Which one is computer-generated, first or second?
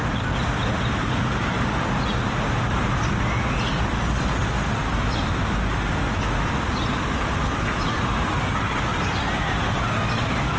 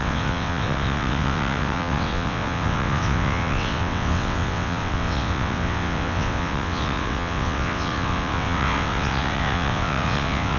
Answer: second